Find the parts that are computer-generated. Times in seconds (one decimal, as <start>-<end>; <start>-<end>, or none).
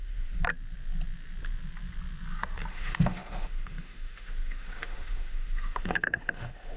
0.0-0.4; 2.7-6.8